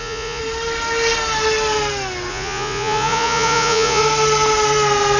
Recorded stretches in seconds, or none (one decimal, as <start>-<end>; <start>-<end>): 0.4-2.3; 4.0-5.2